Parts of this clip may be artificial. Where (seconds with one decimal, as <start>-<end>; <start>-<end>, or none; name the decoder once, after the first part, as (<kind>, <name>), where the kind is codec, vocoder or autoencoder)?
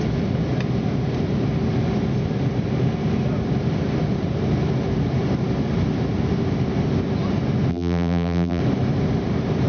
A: 7.7-8.6 (vocoder, BigVGAN v2)